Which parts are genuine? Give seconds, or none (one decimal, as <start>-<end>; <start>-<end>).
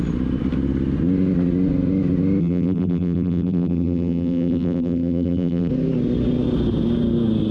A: 0.0-2.4; 5.7-7.5